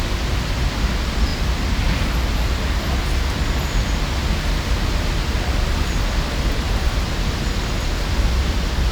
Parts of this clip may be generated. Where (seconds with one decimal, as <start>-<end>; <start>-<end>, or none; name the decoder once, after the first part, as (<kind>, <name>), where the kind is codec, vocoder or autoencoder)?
none